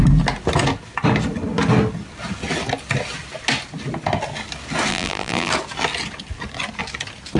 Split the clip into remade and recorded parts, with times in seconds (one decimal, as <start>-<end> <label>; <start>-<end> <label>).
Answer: 0.0-4.9 recorded; 4.9-5.5 remade; 5.5-7.4 recorded